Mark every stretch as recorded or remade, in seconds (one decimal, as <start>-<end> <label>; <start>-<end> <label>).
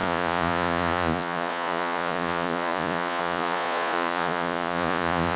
0.0-5.4 remade